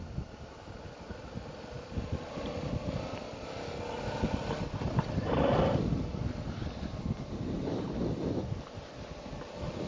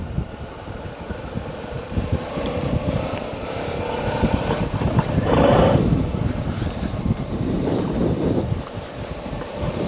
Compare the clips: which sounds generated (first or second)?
second